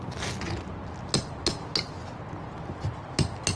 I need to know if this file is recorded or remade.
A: recorded